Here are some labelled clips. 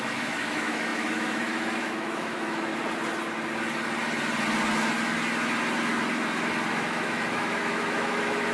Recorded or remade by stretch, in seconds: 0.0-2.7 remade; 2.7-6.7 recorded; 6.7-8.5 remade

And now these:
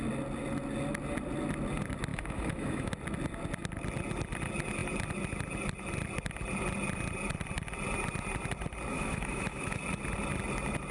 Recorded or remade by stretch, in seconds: 0.0-2.1 recorded; 2.1-2.9 remade; 2.9-8.9 recorded; 8.9-9.8 remade; 9.8-10.9 recorded

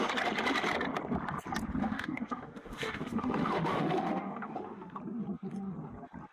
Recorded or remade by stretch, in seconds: 0.0-1.8 recorded; 1.8-5.0 remade; 5.0-6.3 recorded

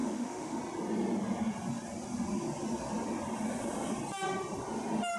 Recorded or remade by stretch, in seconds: 0.0-0.6 remade; 0.6-5.2 recorded

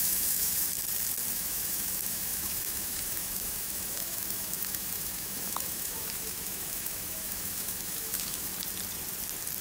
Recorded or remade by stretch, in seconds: 0.0-0.7 remade; 0.7-1.3 recorded; 1.3-8.5 remade; 8.5-9.6 recorded

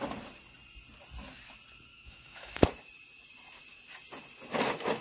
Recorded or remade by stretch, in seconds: 0.0-1.9 recorded; 1.9-2.7 remade; 2.7-5.0 recorded